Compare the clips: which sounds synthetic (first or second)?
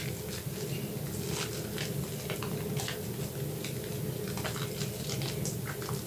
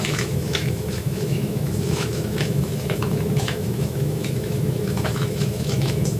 second